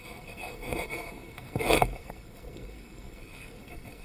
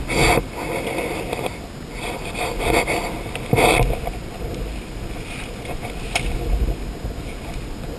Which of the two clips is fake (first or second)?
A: first